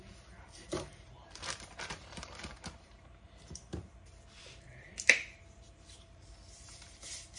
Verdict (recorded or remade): remade